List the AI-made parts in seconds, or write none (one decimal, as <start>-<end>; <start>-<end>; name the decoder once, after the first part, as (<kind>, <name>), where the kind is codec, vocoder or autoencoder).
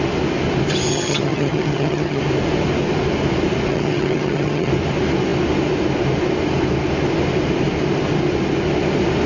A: 0.9-2.2 (vocoder, HiFi-GAN); 3.7-4.7